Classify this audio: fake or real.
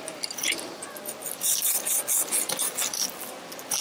real